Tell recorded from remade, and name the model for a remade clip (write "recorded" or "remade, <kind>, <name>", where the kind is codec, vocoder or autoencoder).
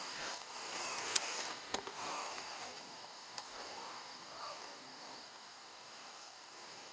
remade, codec, DAC